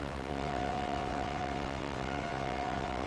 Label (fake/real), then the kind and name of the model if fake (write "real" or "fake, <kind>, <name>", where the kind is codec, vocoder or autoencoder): fake, vocoder, WaveNeXt